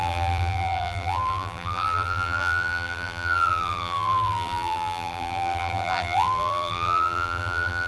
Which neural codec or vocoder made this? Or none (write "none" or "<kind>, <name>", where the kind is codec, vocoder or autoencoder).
vocoder, BigVGAN v2